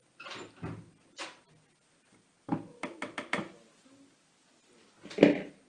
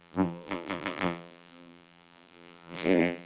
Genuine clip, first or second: first